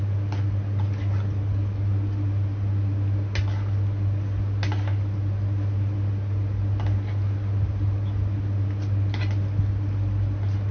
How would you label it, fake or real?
real